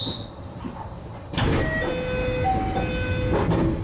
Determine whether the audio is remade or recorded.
recorded